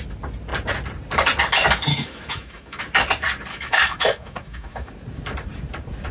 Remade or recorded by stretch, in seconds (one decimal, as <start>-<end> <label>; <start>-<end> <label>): 0.0-1.9 recorded; 1.9-2.8 remade; 2.8-3.5 recorded; 3.5-4.9 remade; 4.9-6.1 recorded